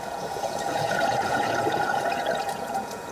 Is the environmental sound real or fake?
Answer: fake